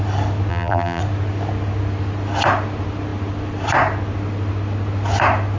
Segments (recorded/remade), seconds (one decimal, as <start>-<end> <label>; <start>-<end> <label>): 0.0-0.5 recorded; 0.5-1.0 remade; 1.0-5.6 recorded